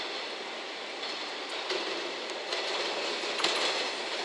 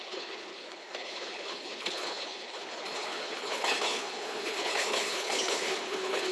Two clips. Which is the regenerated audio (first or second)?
second